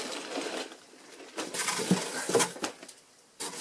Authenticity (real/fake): real